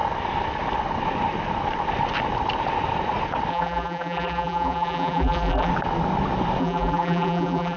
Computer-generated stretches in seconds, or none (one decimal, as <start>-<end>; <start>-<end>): 3.5-5.7; 6.6-7.8